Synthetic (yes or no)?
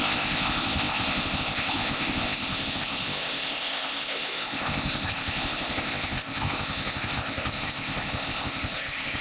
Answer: yes